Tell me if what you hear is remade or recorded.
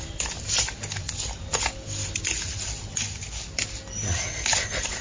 recorded